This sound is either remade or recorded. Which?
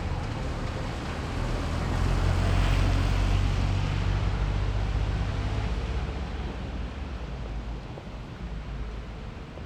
recorded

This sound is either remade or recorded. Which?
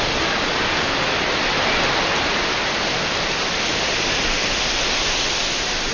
recorded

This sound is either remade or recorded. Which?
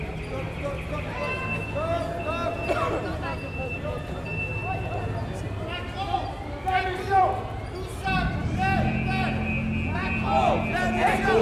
recorded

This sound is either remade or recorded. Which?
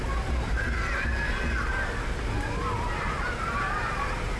recorded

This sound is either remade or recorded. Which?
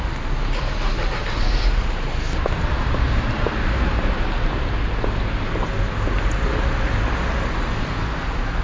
recorded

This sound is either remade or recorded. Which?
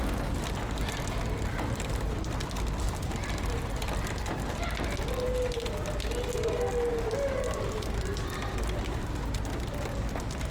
recorded